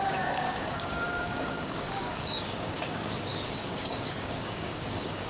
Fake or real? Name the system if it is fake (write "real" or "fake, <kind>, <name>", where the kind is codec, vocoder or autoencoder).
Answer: fake, codec, DAC